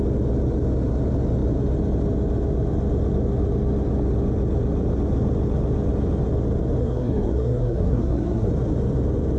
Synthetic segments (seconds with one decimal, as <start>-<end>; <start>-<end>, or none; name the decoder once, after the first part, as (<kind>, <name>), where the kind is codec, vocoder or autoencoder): 6.8-8.5 (codec, SNAC)

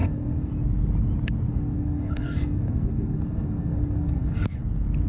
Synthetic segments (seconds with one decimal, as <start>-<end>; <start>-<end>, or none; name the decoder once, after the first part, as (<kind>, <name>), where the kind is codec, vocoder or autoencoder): 0.0-0.5 (codec, SNAC); 1.5-4.6

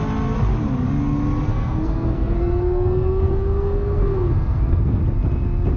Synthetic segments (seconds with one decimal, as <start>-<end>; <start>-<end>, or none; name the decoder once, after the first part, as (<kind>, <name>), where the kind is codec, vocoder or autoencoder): 1.5-5.0 (codec, SNAC)

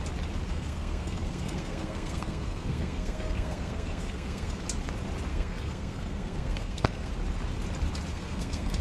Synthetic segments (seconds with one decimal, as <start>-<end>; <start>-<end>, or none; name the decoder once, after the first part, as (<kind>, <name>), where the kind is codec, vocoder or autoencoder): 0.5-4.6 (codec, SNAC); 5.3-7.1; 8.1-8.8

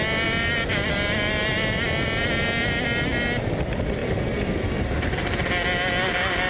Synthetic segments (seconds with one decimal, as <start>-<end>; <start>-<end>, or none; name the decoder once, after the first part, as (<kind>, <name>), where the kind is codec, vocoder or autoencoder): none